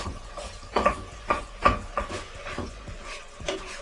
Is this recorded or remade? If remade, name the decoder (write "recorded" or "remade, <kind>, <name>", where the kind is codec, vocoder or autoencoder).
remade, vocoder, Vocos